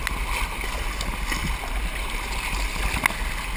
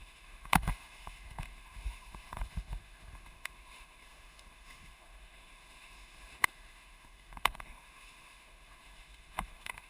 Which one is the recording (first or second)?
first